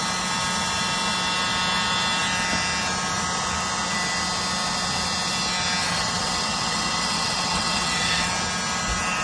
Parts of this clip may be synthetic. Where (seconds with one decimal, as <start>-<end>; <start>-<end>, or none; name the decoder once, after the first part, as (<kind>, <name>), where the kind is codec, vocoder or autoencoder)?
5.8-8.3 (vocoder, WaveNeXt)